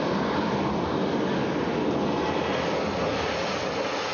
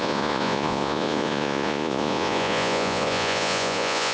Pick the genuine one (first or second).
first